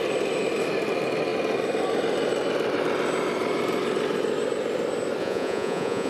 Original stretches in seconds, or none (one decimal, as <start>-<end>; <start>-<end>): 0.0-5.2